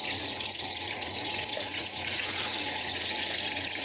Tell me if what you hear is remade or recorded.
remade